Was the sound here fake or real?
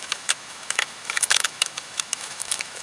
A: fake